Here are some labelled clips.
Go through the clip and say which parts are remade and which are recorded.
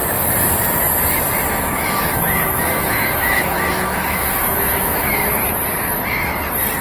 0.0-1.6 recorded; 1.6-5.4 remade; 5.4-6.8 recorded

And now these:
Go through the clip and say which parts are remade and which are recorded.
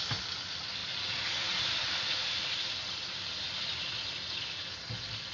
0.0-5.3 recorded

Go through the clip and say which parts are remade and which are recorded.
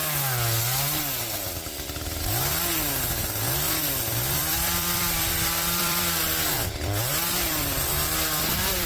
0.0-4.0 recorded; 4.0-8.9 remade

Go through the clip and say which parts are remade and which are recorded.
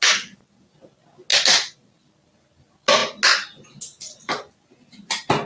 0.0-5.5 recorded